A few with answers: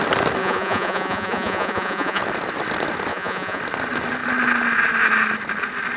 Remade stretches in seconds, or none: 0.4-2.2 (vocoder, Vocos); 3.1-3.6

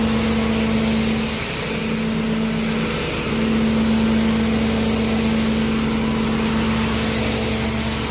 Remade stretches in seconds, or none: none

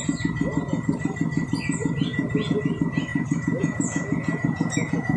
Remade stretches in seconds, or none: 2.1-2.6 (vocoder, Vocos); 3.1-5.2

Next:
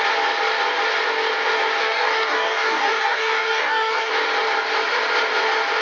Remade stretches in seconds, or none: 1.8-4.1 (codec, DAC)

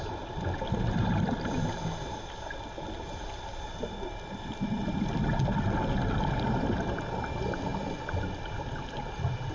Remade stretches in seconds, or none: 0.0-7.7 (vocoder, BigVGAN v2); 8.2-9.5